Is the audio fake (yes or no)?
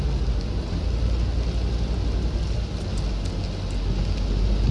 no